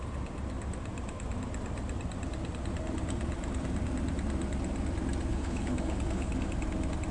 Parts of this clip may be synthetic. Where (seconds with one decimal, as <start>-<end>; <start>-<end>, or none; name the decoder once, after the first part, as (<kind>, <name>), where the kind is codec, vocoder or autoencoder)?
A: 5.3-6.3 (codec, HILCodec)